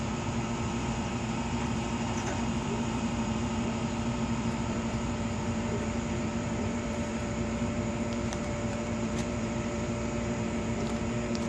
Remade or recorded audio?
remade